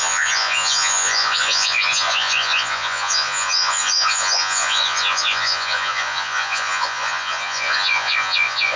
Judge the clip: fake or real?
fake